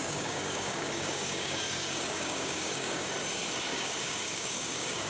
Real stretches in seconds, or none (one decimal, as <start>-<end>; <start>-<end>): 3.1-3.7